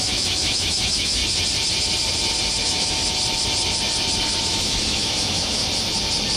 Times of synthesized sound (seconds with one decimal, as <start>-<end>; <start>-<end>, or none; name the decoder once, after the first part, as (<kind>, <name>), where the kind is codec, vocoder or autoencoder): 0.0-1.2 (autoencoder, DAC-VAE); 2.6-3.0; 4.4-5.6